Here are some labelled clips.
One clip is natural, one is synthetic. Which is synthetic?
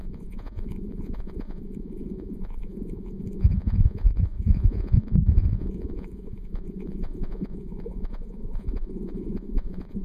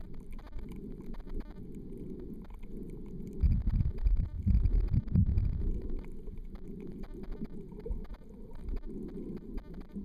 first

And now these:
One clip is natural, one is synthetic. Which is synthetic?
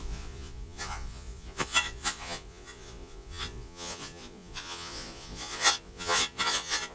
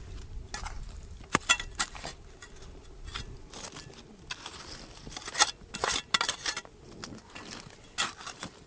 first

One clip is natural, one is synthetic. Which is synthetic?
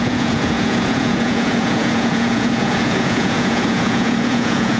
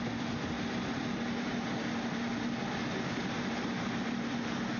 first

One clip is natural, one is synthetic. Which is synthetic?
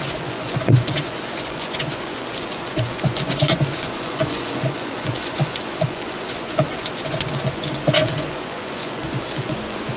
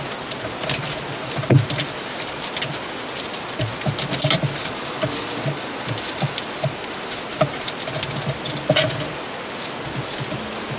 first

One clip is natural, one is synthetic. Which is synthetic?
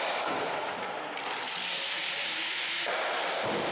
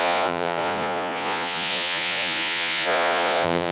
second